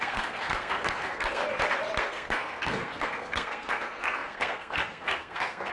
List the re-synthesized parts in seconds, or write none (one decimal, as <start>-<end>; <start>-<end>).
0.0-1.4; 2.0-5.7